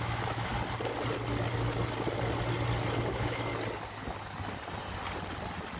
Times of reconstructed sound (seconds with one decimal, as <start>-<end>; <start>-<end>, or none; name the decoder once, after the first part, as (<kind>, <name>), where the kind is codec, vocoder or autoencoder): 0.0-0.5 (autoencoder, DAC-VAE); 3.1-3.5